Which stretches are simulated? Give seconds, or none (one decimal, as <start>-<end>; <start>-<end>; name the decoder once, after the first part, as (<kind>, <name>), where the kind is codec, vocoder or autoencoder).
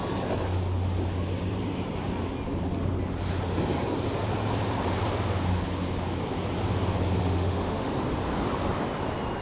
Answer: 7.2-7.9 (autoencoder, DAC-VAE)